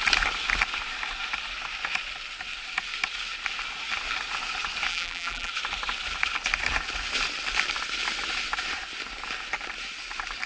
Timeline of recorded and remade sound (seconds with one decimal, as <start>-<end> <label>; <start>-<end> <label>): 0.0-4.9 recorded; 4.9-5.5 remade; 5.5-10.5 recorded